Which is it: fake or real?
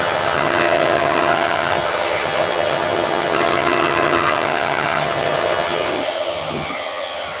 fake